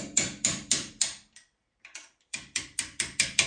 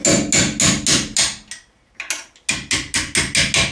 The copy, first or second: first